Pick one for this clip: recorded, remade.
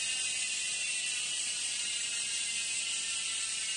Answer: recorded